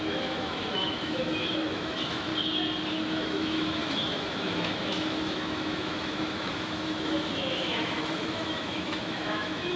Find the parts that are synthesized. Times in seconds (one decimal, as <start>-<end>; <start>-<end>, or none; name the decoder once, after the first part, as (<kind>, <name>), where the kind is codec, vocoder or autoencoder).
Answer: 0.0-2.3 (autoencoder, DAC-VAE); 2.9-9.8

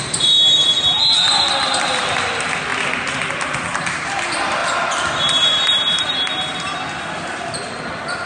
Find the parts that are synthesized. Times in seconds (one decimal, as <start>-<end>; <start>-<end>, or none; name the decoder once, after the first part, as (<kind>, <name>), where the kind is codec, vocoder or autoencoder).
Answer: none